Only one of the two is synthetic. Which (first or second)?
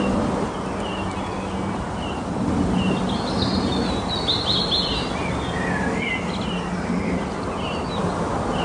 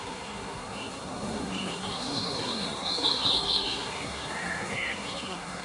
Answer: second